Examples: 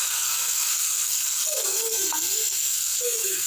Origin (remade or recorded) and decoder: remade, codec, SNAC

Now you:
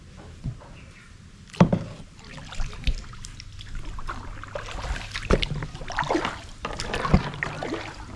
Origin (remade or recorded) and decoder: remade, vocoder, BigVGAN v2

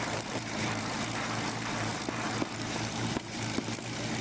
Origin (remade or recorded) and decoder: remade, vocoder, BigVGAN v2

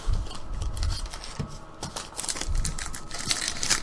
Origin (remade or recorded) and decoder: recorded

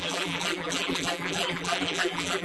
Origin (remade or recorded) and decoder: remade, vocoder, BigVGAN v2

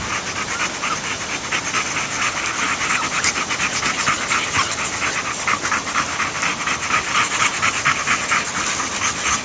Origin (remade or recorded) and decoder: recorded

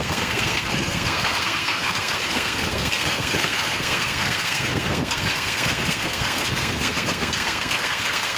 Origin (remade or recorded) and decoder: remade, codec, SNAC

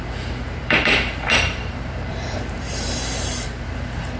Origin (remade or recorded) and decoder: remade, vocoder, BigVGAN v2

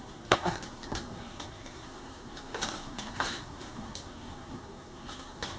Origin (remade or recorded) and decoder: remade, codec, SNAC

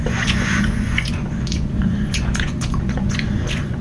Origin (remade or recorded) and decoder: remade, vocoder, Vocos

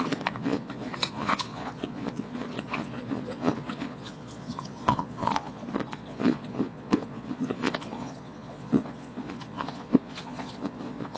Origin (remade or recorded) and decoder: remade, vocoder, Vocos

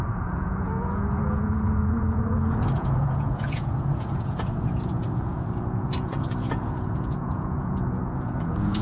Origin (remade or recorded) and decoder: remade, vocoder, Vocos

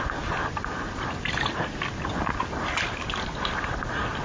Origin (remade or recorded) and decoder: recorded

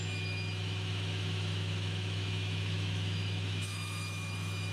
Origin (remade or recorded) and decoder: remade, autoencoder, DAC-VAE